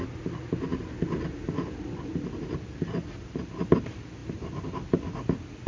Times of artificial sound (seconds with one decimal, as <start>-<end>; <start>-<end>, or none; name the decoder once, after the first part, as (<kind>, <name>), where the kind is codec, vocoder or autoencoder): none